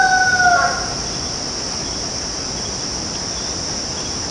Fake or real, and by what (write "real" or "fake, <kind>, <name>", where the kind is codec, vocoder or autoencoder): real